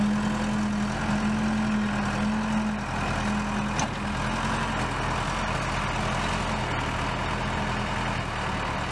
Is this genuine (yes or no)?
yes